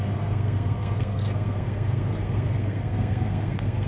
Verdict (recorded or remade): remade